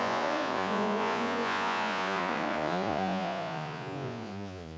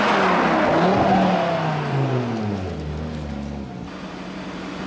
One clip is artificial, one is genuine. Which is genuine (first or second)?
second